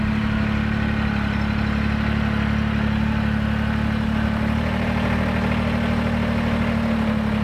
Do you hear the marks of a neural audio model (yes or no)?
no